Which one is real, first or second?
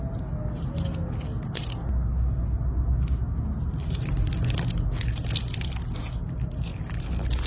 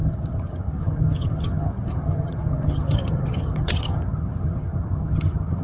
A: first